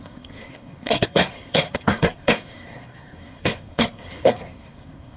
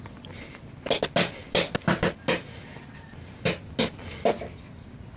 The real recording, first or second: second